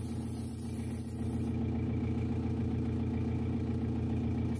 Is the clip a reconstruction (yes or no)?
no